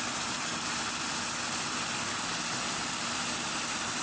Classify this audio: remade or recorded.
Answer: recorded